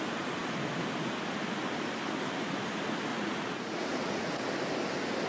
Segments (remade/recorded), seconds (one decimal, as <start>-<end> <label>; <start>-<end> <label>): 0.0-3.1 recorded; 3.1-4.4 remade; 4.4-5.3 recorded

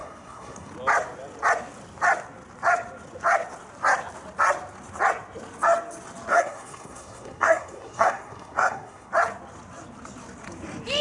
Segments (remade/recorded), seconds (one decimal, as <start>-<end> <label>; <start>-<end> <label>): 0.0-0.7 remade; 0.7-6.3 recorded; 6.3-9.1 remade; 9.1-11.0 recorded

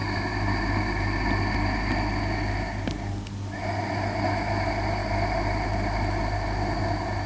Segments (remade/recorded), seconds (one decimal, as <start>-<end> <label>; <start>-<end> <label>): 0.0-7.3 recorded

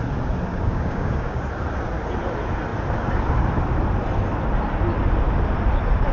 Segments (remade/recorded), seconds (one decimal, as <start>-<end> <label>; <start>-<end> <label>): 0.0-0.5 recorded; 0.5-1.4 remade; 1.4-6.1 recorded